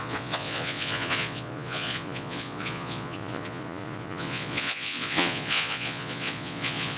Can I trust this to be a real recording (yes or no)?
no